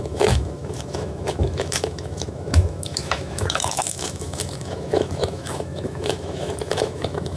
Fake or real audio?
fake